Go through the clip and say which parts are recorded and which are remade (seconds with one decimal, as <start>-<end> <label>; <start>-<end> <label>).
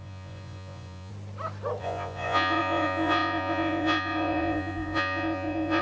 0.0-1.1 remade; 1.1-1.8 recorded; 1.8-5.8 remade